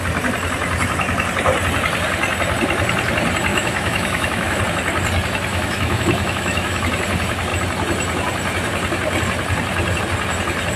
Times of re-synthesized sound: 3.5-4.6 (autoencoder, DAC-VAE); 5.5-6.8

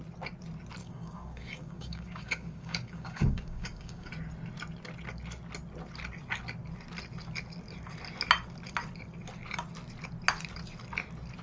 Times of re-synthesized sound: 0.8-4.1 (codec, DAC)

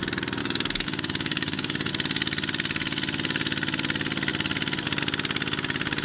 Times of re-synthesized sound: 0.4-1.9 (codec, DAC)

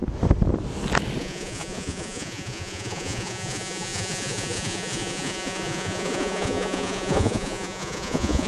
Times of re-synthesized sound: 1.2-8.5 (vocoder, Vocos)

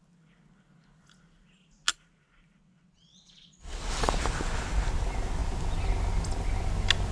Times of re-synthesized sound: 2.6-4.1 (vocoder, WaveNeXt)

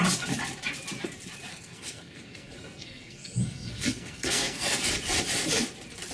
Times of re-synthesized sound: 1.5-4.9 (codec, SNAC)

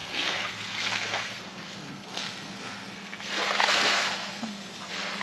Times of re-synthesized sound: 0.0-5.2 (codec, SNAC)

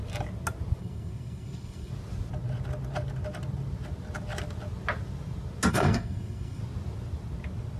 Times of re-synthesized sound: 0.8-1.9 (codec, SNAC); 5.7-6.6